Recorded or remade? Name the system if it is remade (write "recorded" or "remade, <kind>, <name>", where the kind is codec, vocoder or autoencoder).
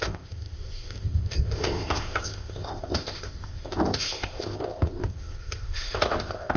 remade, codec, ZipCodec